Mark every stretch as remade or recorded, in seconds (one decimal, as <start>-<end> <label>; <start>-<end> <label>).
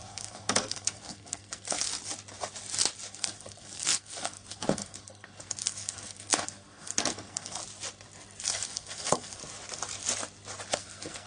0.0-1.9 remade; 1.9-3.1 recorded; 3.1-7.6 remade; 7.6-8.4 recorded; 8.4-9.4 remade; 9.4-10.7 recorded; 10.7-11.3 remade